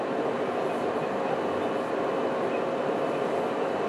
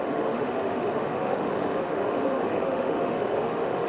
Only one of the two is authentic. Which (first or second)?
first